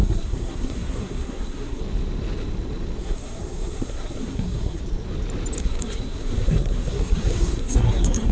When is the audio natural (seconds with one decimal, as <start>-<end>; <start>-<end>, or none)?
1.8-3.0; 4.8-5.6